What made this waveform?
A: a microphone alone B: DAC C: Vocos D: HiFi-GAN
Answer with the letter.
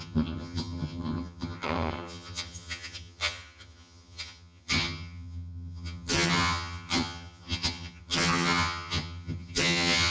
D